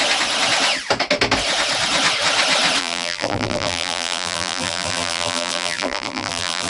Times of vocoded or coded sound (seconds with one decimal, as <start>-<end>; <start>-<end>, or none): 2.8-6.7